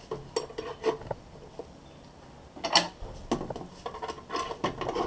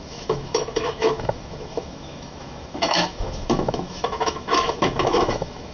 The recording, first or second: first